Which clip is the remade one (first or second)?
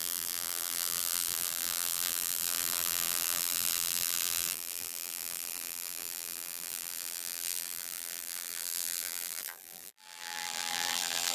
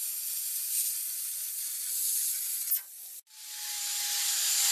first